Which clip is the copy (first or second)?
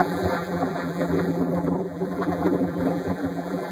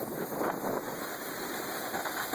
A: first